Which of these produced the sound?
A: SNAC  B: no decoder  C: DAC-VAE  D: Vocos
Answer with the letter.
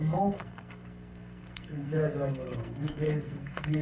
A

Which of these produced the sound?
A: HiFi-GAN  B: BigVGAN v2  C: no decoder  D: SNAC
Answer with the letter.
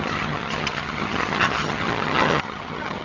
A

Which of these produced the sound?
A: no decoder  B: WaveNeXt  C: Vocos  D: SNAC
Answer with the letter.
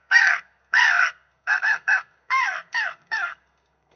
D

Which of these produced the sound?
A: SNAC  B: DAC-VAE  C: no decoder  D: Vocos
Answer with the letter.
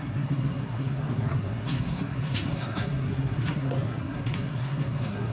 A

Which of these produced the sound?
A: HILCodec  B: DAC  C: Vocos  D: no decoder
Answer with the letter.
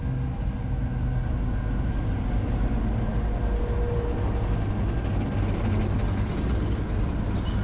D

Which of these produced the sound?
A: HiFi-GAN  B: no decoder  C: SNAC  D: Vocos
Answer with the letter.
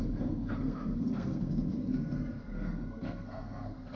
C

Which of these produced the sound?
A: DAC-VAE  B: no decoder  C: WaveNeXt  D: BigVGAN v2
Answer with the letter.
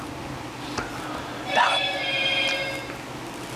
B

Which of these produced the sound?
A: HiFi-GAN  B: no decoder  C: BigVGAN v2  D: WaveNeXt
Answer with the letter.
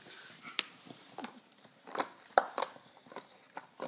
C